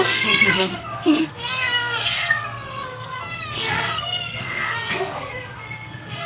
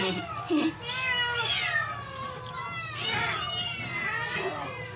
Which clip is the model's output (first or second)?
first